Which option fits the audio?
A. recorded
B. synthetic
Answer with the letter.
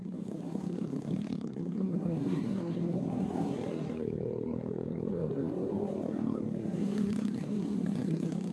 B